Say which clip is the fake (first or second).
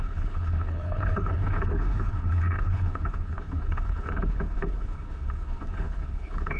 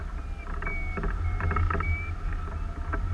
first